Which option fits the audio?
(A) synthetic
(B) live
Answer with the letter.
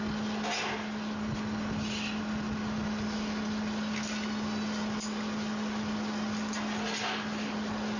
B